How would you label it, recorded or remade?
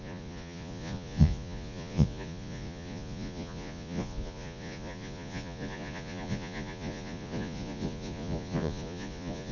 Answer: remade